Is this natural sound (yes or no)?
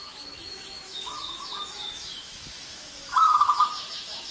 no